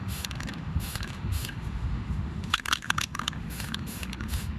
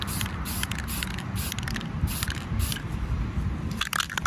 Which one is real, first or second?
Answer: second